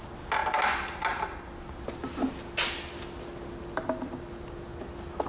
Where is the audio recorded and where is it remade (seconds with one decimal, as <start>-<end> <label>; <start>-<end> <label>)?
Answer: 0.0-5.3 recorded